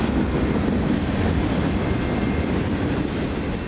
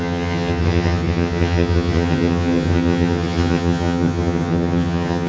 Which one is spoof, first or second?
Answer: second